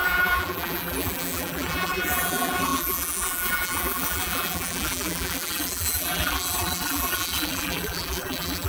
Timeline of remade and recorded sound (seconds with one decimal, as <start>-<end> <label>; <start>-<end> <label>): 0.0-8.7 remade